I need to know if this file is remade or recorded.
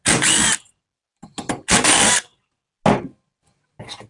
recorded